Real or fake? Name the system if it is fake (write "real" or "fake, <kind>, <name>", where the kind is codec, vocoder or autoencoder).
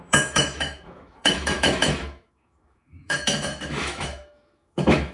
fake, autoencoder, DAC-VAE